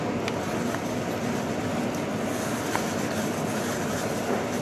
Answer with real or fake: real